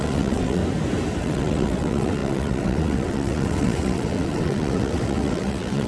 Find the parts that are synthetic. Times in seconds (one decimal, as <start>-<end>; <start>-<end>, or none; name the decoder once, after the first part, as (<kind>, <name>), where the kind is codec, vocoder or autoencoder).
0.0-0.6 (vocoder, WaveNeXt); 1.2-5.9